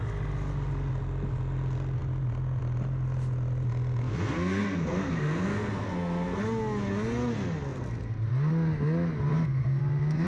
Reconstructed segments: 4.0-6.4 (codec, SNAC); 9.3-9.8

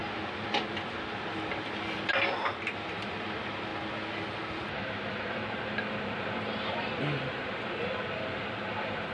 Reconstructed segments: 1.1-3.7 (vocoder, BigVGAN v2); 5.3-9.1

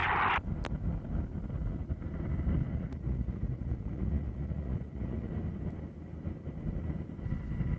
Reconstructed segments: 2.7-5.3 (vocoder, Vocos)

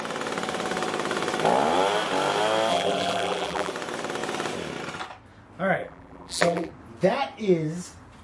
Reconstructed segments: 2.7-3.7 (vocoder, BigVGAN v2); 5.8-6.7

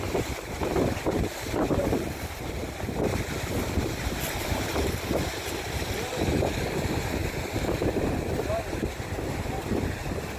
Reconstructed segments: 2.6-4.7 (vocoder, BigVGAN v2); 7.2-8.1

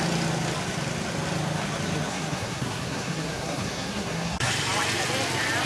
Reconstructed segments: 2.1-4.5 (codec, SNAC)